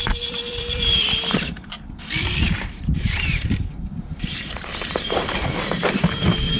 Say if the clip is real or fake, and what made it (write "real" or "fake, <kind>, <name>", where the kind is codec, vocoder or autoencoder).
fake, vocoder, BigVGAN v2